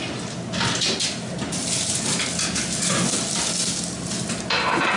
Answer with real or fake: real